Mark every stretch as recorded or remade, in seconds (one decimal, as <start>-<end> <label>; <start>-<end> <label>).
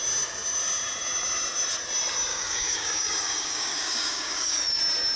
0.0-2.3 recorded; 2.3-4.8 remade; 4.8-5.2 recorded